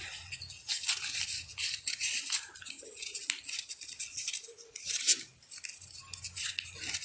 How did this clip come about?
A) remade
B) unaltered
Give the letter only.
B